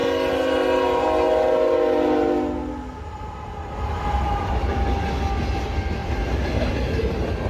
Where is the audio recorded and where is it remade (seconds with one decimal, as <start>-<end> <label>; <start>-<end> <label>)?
0.0-6.0 recorded; 6.0-6.7 remade; 6.7-7.5 recorded